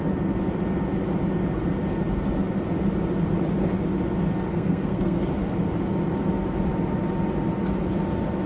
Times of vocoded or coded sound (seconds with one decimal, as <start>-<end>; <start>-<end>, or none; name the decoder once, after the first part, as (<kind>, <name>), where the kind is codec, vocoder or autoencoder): 4.5-5.2 (codec, SNAC)